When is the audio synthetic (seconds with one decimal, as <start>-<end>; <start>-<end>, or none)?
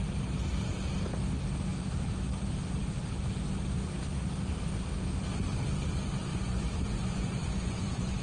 6.3-8.2